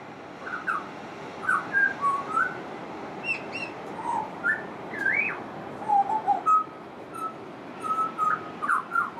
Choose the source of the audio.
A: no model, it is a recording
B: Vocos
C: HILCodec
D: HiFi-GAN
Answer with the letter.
A